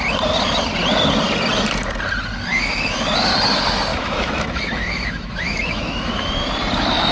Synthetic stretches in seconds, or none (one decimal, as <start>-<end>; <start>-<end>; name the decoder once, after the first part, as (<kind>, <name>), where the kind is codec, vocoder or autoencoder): 2.5-3.1 (autoencoder, DAC-VAE); 3.9-6.3